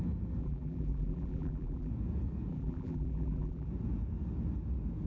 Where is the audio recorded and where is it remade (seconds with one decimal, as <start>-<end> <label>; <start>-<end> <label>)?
0.0-0.4 recorded; 0.4-1.9 remade; 1.9-2.5 recorded; 2.5-3.7 remade; 3.7-5.1 recorded